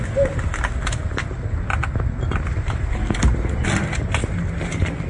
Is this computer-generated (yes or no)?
no